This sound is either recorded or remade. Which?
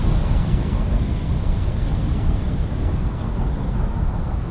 remade